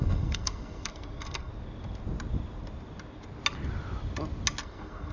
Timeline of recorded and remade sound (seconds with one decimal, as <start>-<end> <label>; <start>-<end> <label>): 0.0-1.5 remade; 1.5-4.6 recorded; 4.6-5.1 remade